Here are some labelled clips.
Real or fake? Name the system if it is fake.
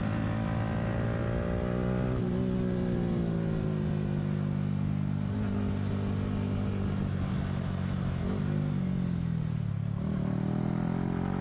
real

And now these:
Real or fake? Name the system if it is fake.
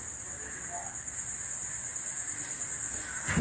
real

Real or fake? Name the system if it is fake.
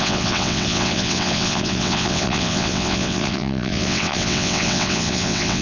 fake, vocoder, WaveNeXt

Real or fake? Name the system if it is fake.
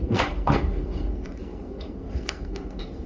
fake, codec, SNAC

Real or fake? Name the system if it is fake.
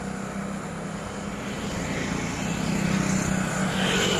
real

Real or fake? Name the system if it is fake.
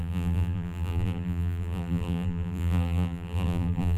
fake, vocoder, BigVGAN v2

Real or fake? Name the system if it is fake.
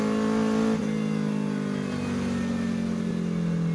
real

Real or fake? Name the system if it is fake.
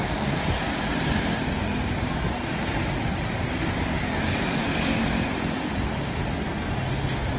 real